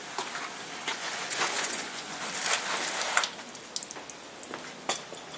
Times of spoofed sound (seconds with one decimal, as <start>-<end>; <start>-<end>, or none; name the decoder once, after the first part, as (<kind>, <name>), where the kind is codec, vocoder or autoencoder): 0.8-2.2 (vocoder, Vocos)